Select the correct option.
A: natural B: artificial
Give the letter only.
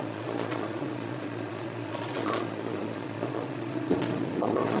B